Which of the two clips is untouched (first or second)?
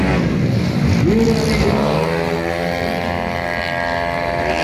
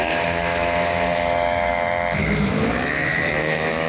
first